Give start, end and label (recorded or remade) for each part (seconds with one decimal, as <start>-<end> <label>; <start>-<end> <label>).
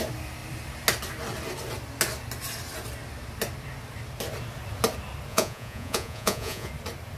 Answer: 0.0-5.3 recorded; 5.3-6.7 remade; 6.7-7.2 recorded